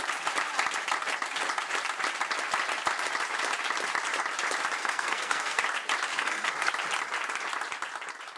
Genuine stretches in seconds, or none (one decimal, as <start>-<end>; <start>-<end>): 0.0-4.8; 5.6-6.1; 6.7-8.4